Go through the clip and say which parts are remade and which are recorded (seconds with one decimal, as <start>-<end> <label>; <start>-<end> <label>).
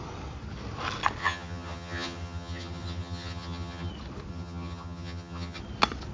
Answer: 0.0-1.2 recorded; 1.2-3.9 remade; 3.9-4.3 recorded; 4.3-5.6 remade; 5.6-6.1 recorded